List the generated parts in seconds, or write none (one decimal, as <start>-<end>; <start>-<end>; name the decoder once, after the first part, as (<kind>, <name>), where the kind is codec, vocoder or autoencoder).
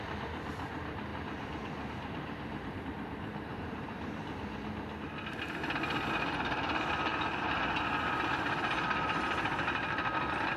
1.1-2.8 (vocoder, BigVGAN v2); 3.5-4.4